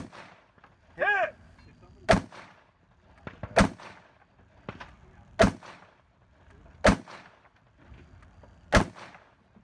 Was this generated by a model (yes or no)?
no